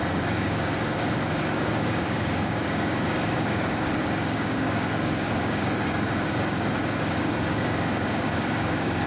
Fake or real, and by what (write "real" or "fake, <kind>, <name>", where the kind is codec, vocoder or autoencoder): fake, codec, DAC